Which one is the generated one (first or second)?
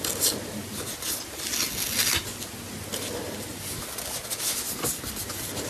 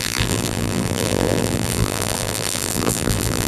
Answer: second